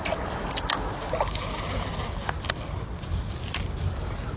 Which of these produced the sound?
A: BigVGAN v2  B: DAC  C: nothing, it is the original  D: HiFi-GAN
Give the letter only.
C